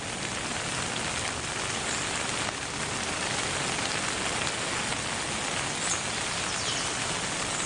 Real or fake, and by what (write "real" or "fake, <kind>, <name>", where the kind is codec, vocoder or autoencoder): real